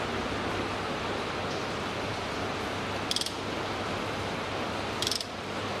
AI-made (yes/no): no